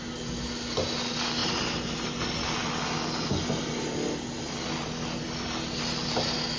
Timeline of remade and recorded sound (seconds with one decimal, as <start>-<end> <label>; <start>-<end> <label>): 0.0-6.6 recorded